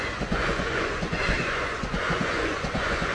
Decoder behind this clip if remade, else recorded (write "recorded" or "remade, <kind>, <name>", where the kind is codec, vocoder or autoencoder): remade, vocoder, Vocos